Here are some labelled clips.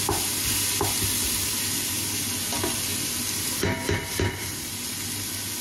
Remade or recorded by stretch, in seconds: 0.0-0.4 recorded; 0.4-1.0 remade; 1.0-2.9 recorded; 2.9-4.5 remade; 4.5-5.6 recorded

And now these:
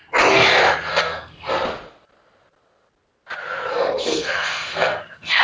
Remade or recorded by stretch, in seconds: 0.0-0.9 recorded; 0.9-1.5 remade; 1.5-3.7 recorded; 3.7-5.4 remade

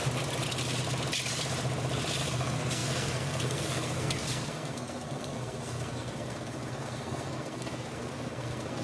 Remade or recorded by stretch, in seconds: 0.0-2.2 recorded; 2.2-8.8 remade